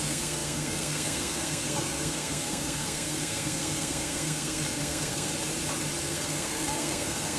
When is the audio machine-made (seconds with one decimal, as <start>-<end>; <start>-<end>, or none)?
0.0-5.3; 6.0-7.4